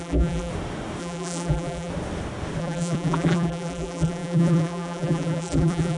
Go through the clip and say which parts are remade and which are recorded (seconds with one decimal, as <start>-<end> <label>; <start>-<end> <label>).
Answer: 0.0-0.5 remade; 0.5-1.0 recorded; 1.0-1.9 remade; 1.9-2.6 recorded; 2.6-6.0 remade